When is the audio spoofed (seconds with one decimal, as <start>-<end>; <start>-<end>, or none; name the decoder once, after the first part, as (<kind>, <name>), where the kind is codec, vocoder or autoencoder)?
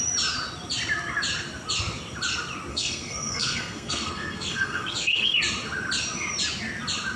2.7-5.4 (codec, SNAC)